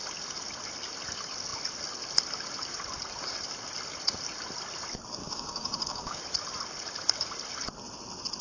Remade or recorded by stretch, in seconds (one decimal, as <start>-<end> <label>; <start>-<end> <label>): 0.0-5.2 recorded; 5.2-6.2 remade; 6.2-8.4 recorded